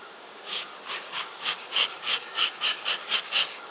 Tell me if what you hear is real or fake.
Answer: fake